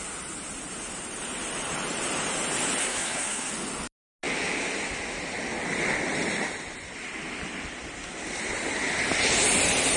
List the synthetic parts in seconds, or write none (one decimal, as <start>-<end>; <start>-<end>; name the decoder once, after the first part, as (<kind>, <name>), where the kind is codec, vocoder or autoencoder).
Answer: 2.8-3.5 (codec, SNAC)